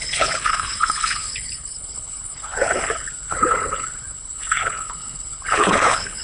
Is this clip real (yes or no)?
no